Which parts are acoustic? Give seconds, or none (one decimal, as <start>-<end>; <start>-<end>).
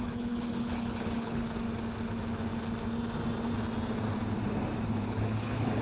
1.4-4.9